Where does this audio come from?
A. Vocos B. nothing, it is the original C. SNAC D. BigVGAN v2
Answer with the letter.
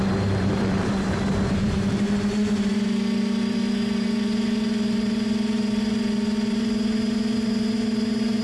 D